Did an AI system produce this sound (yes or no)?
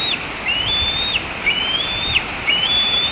no